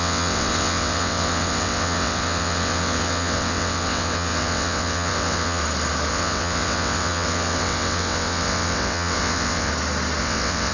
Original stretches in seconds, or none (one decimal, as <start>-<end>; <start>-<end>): 5.6-6.1; 9.7-10.2